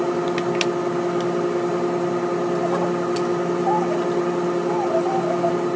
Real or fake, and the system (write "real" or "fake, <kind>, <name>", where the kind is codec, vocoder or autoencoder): real